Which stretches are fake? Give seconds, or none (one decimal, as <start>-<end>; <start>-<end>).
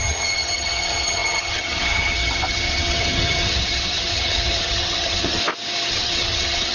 0.0-5.4; 5.9-6.7